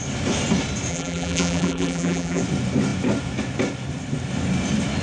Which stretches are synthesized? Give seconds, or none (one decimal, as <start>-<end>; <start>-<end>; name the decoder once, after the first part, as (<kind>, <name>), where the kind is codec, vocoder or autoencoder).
0.9-2.4 (vocoder, BigVGAN v2)